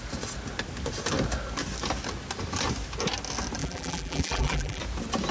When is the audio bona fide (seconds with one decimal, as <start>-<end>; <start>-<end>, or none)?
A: 0.0-3.6; 4.8-5.3